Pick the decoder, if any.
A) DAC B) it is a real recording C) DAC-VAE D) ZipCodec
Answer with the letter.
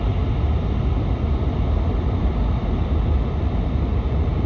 B